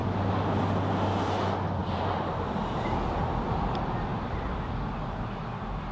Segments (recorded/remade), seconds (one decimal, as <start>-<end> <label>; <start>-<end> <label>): 0.0-0.5 remade; 0.5-1.8 recorded; 1.8-3.2 remade; 3.2-4.1 recorded; 4.1-4.7 remade; 4.7-5.9 recorded

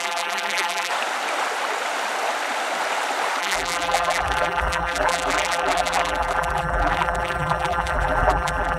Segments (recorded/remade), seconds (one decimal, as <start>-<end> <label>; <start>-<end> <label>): 0.0-0.9 remade; 0.9-3.4 recorded; 3.4-8.8 remade

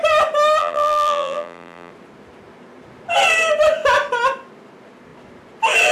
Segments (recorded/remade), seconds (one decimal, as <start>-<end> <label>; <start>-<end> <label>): 0.0-0.6 recorded; 0.6-1.9 remade; 1.9-5.9 recorded

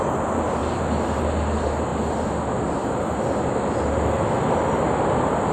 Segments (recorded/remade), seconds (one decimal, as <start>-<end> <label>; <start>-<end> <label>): 0.0-0.6 recorded; 0.6-1.2 remade; 1.2-5.5 recorded

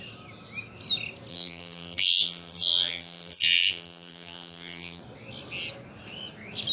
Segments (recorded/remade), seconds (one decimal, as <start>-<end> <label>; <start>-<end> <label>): 0.0-1.3 recorded; 1.3-5.0 remade; 5.0-6.7 recorded